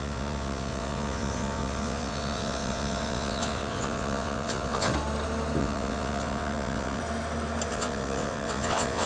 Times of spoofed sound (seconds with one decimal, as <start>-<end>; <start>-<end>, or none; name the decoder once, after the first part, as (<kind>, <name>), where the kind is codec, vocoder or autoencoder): 0.0-4.9 (vocoder, WaveNeXt); 5.6-7.0; 7.7-9.1